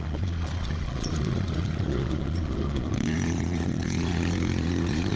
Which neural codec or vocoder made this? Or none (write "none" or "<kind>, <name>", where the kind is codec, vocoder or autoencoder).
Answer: vocoder, Vocos